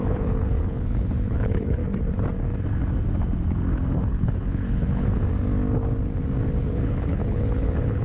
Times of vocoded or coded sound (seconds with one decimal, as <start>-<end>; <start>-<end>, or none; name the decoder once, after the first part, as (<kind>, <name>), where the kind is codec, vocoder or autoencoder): 0.0-1.8 (codec, HILCodec); 4.1-5.2; 6.6-8.0